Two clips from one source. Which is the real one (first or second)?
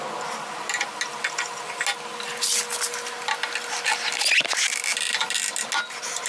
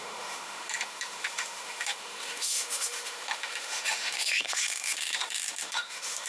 first